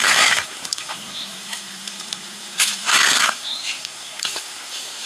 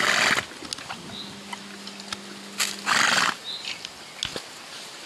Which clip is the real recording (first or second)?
second